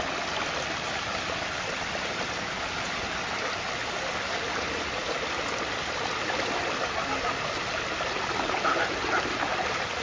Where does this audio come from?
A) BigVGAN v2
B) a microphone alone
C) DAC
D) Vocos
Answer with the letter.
B